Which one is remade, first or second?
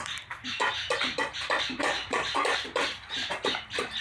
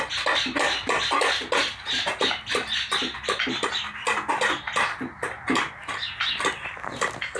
first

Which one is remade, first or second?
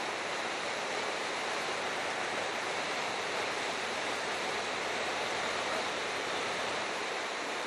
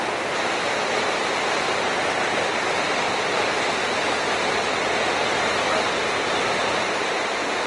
first